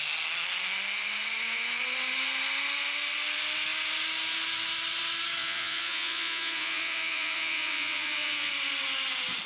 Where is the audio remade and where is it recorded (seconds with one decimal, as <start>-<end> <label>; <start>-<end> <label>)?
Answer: 0.0-5.4 recorded; 5.4-8.5 remade; 8.5-9.5 recorded